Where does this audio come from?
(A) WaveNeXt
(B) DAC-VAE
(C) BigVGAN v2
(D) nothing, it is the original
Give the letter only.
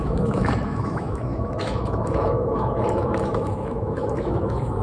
B